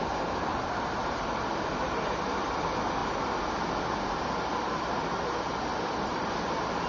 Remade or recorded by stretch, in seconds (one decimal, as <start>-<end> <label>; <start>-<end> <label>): 0.0-1.0 recorded; 1.0-2.6 remade; 2.6-5.7 recorded; 5.7-6.3 remade; 6.3-6.9 recorded